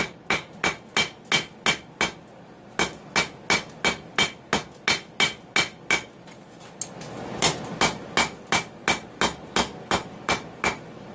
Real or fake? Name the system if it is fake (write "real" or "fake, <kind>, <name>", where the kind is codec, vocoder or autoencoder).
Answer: real